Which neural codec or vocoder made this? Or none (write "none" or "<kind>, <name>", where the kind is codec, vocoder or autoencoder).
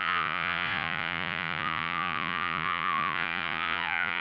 vocoder, Vocos